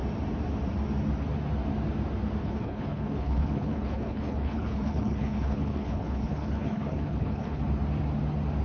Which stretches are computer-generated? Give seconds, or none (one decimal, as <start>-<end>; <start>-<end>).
2.4-7.6